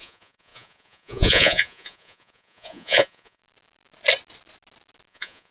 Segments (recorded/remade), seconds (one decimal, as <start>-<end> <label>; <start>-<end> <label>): 0.0-3.4 remade; 3.4-5.1 recorded; 5.1-5.5 remade